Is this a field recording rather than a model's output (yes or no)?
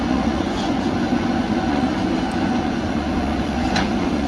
no